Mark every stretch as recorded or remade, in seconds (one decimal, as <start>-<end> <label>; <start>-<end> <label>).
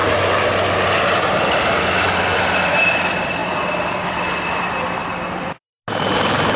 0.0-5.0 recorded; 5.0-5.6 remade; 5.6-6.6 recorded